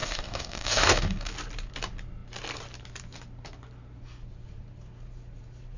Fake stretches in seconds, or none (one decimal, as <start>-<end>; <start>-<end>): 0.0-1.3